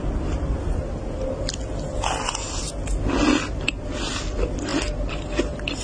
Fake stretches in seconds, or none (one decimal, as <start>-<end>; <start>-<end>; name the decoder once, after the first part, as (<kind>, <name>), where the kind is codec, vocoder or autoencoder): none